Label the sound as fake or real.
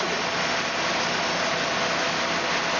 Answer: real